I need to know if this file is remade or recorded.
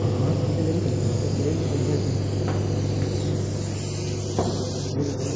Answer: recorded